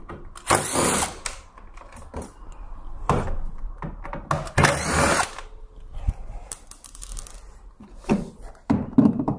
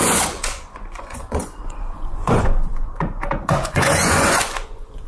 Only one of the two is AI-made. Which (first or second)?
second